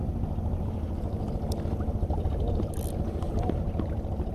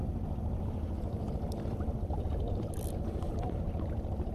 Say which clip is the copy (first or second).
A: second